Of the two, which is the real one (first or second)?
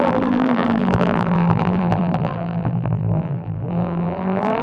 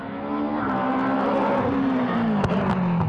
second